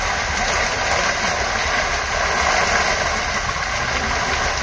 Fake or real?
real